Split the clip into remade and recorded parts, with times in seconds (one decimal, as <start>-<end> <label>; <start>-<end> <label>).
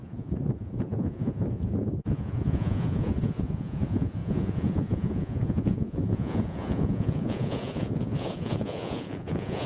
0.0-9.7 remade